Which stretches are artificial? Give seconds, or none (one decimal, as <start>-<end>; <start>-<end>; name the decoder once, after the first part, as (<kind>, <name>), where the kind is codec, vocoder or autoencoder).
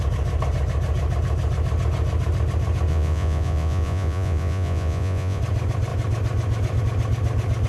2.9-5.4 (vocoder, Vocos)